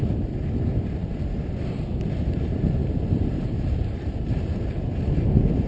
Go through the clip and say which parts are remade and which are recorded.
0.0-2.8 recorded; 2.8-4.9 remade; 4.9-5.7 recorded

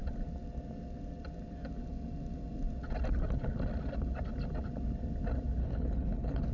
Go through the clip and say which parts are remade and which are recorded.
0.0-5.6 recorded; 5.6-6.5 remade

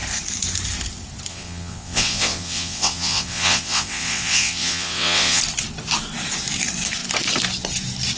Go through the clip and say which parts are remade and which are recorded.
0.0-1.3 recorded; 1.3-5.4 remade; 5.4-8.2 recorded

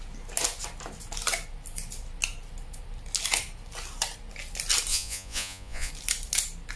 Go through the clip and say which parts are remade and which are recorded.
0.0-4.9 recorded; 4.9-5.9 remade; 5.9-6.8 recorded

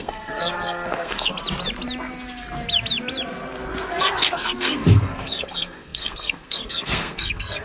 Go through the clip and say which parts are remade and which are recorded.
0.0-1.3 remade; 1.3-3.9 recorded; 3.9-7.6 remade

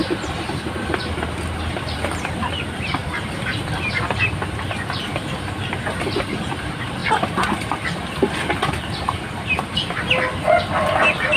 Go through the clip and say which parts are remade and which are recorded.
0.0-11.4 recorded